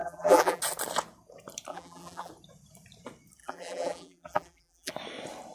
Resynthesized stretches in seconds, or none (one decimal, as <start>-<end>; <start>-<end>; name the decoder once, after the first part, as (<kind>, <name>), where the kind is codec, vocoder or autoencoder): 0.0-0.6 (vocoder, BigVGAN v2); 1.7-2.3; 3.4-4.9